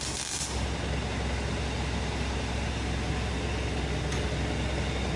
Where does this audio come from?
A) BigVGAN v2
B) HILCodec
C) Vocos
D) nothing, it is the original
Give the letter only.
D